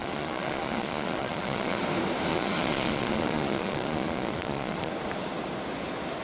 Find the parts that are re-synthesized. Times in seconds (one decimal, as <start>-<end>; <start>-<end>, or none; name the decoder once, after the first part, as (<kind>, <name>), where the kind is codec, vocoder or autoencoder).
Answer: 0.0-1.8 (vocoder, Vocos); 2.3-4.9